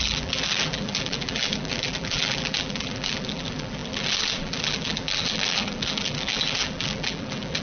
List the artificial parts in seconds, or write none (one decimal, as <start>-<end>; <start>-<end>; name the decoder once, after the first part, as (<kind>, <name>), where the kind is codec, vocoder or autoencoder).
0.0-7.6 (vocoder, BigVGAN v2)